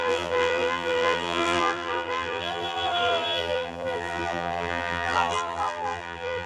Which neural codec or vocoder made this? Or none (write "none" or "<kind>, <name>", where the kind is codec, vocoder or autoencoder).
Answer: vocoder, BigVGAN v2